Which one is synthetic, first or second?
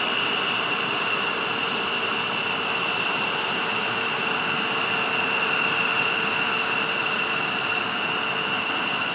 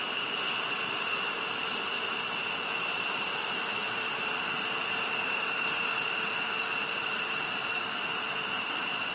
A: second